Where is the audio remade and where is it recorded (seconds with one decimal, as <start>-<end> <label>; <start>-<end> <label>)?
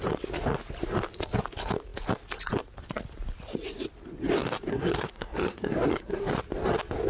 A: 0.0-4.7 recorded; 4.7-6.3 remade; 6.3-7.1 recorded